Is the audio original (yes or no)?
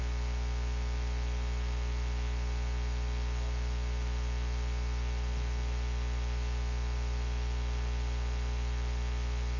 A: yes